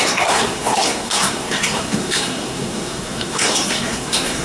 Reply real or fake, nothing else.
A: fake